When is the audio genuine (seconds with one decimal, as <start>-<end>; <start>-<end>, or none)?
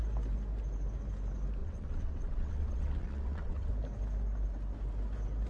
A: 0.0-1.6; 3.7-5.5